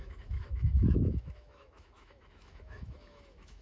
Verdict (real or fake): fake